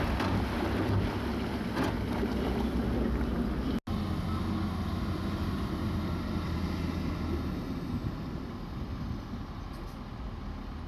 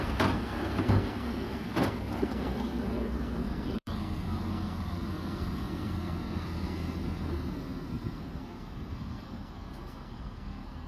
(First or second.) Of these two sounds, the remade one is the second